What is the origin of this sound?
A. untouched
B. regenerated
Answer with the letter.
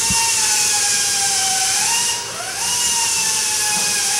B